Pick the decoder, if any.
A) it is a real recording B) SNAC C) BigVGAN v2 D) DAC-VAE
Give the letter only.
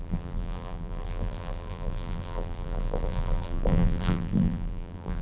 C